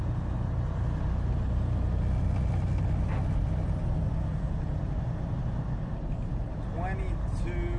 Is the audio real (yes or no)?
yes